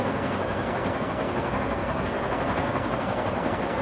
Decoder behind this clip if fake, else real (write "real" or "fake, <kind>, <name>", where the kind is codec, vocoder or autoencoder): fake, codec, SNAC